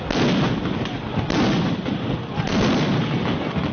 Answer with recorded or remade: recorded